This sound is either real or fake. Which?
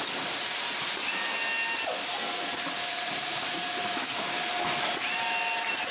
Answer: real